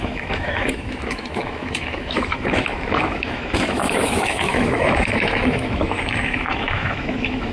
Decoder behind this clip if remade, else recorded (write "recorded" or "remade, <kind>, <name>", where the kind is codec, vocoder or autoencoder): remade, autoencoder, DAC-VAE